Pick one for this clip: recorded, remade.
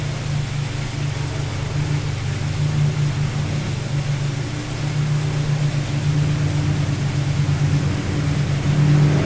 recorded